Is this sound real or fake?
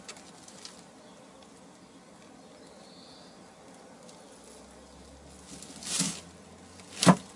real